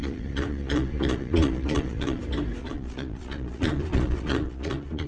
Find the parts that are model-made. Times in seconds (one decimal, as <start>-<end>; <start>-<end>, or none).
0.0-2.2; 2.6-5.1